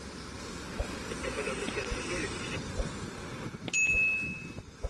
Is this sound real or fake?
real